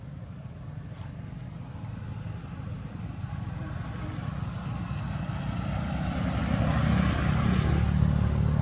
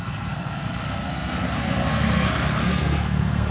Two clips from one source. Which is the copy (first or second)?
second